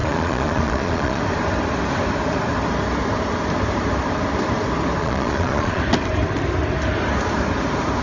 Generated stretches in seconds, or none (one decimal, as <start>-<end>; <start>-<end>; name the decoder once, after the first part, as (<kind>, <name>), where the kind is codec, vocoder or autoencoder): 0.0-1.2 (vocoder, Vocos); 5.0-5.8